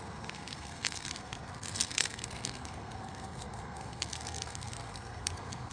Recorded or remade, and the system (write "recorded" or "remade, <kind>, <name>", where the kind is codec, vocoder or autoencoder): remade, codec, SNAC